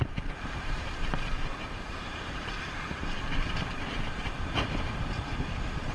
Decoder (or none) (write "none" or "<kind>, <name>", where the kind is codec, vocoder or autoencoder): vocoder, BigVGAN v2